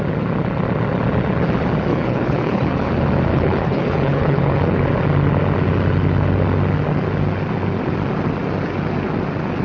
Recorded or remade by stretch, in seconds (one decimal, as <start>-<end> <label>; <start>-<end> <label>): 0.0-1.9 recorded; 1.9-2.9 remade; 2.9-3.3 recorded; 3.3-4.8 remade; 4.8-9.6 recorded